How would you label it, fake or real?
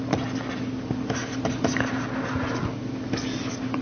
real